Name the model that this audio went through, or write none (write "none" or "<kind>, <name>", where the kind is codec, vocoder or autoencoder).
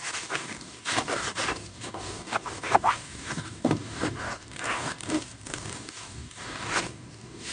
codec, DAC